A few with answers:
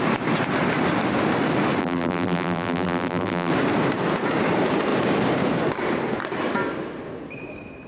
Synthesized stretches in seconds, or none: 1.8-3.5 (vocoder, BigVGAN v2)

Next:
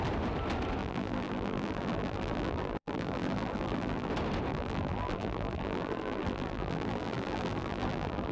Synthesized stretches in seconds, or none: 0.8-4.1 (vocoder, BigVGAN v2); 4.5-8.3

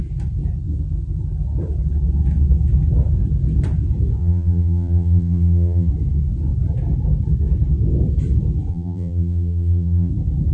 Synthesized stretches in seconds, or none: 4.2-5.9 (vocoder, BigVGAN v2); 8.7-10.1

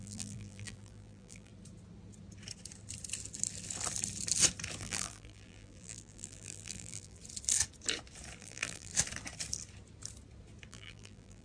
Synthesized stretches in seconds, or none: 0.0-1.5 (vocoder, BigVGAN v2); 4.8-7.2; 8.4-8.9; 10.7-11.4

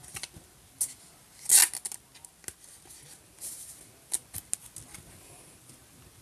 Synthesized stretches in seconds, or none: none